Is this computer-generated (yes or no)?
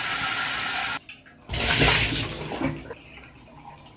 no